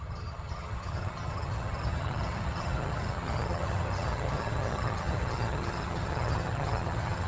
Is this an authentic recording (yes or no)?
no